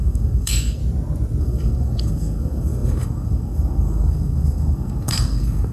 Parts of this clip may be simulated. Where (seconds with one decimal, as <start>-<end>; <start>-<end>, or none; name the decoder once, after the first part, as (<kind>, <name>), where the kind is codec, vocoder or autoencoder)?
0.0-0.8 (codec, SNAC); 1.4-5.7